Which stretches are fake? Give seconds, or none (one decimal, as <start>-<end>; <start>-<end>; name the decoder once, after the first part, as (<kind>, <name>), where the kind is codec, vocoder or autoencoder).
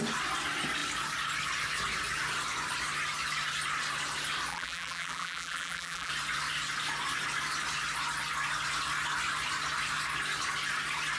4.5-6.1 (vocoder, BigVGAN v2)